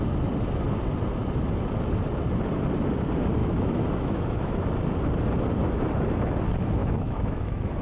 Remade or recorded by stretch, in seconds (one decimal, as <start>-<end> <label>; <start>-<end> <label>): 0.0-3.4 recorded; 3.4-4.7 remade; 4.7-6.8 recorded; 6.8-7.8 remade